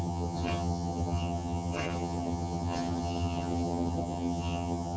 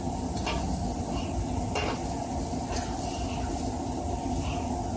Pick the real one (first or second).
second